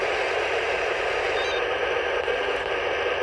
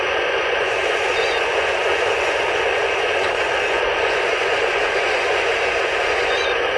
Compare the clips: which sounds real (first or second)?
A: first